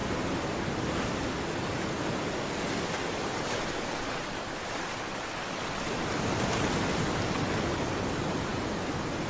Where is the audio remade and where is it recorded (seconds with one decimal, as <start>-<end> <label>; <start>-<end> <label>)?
0.0-9.3 recorded